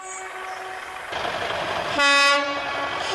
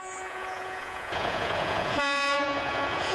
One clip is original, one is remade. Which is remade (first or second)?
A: second